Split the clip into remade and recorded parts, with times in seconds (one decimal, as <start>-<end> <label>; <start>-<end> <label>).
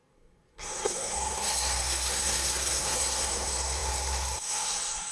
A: 0.0-5.1 remade